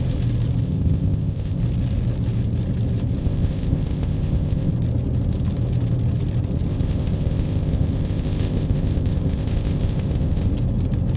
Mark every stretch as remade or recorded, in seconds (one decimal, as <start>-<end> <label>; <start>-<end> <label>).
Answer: 0.0-0.6 recorded; 0.6-1.6 remade; 1.6-3.2 recorded; 3.2-4.7 remade; 4.7-6.7 recorded; 6.7-10.5 remade; 10.5-11.2 recorded